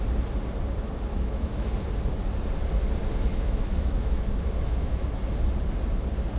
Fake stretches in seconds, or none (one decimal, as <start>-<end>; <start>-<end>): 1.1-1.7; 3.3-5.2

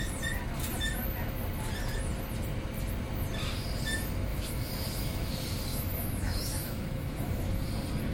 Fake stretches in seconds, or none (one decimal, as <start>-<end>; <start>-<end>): 4.3-5.3; 5.7-7.4

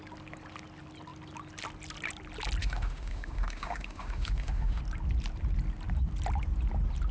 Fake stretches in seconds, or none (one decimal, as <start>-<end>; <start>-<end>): 2.6-4.8

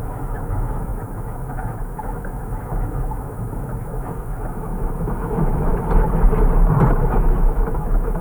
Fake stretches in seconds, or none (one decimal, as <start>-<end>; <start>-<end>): 0.0-5.7; 7.0-8.2

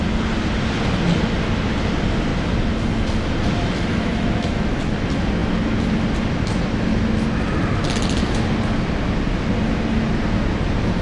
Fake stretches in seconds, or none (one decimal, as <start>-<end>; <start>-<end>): 3.9-4.8